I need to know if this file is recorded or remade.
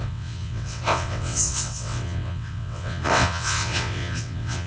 remade